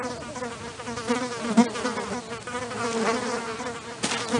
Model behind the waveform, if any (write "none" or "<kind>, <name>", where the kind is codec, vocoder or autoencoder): none